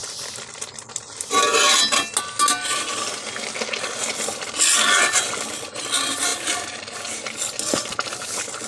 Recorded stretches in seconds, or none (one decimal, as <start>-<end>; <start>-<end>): 0.0-8.7